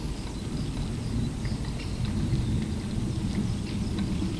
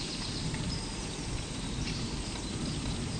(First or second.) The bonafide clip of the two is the first